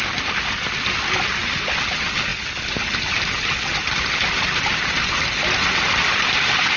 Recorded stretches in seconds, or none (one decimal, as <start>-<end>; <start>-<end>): 0.0-6.8